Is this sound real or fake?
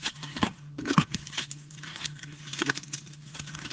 fake